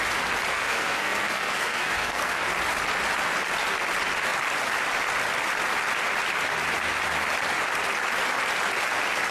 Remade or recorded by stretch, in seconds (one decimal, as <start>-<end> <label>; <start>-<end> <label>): 0.0-0.5 recorded; 0.5-2.5 remade; 2.5-9.3 recorded